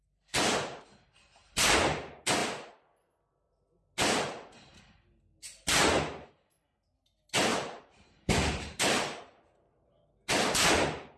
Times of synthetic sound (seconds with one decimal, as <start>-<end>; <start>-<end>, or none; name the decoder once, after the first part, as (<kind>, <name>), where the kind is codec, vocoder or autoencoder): 7.5-10.1 (vocoder, BigVGAN v2)